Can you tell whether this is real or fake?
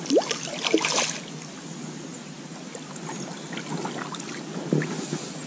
real